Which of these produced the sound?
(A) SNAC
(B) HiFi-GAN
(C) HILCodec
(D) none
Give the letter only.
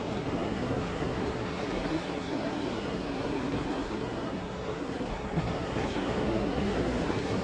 A